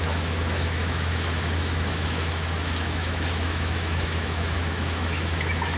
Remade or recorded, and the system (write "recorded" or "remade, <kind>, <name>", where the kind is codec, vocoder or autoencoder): remade, autoencoder, DAC-VAE